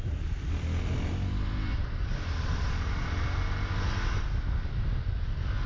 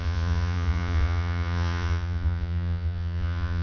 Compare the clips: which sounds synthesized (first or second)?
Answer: second